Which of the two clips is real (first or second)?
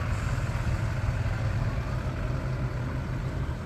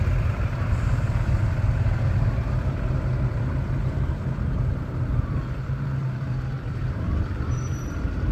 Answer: first